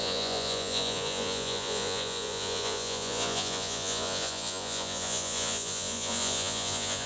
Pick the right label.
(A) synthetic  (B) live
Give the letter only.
A